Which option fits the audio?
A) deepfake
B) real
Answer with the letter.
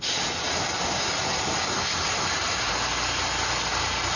B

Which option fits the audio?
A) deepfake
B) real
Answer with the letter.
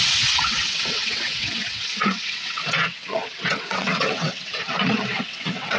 A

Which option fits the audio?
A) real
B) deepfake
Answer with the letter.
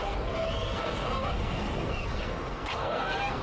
B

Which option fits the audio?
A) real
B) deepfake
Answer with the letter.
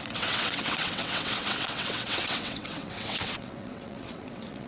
B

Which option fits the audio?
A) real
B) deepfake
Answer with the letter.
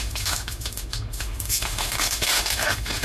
B